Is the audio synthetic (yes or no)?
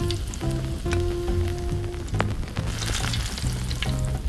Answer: no